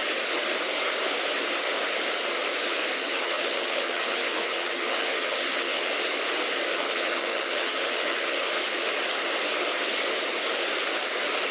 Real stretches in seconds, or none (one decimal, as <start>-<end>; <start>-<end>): 0.0-3.0; 5.9-6.7; 8.5-11.5